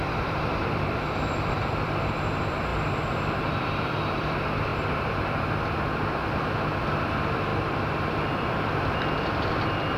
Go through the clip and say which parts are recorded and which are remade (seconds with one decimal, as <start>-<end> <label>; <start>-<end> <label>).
0.0-4.7 remade; 4.7-5.9 recorded; 5.9-10.0 remade